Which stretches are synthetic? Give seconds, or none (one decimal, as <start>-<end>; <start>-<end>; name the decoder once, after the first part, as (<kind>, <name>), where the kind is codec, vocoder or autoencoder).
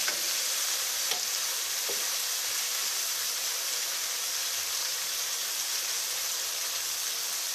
0.0-6.6 (vocoder, BigVGAN v2)